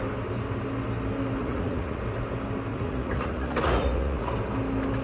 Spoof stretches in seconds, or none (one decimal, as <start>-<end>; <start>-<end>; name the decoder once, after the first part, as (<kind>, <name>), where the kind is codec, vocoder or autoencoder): 1.4-2.0 (vocoder, Vocos); 2.7-4.3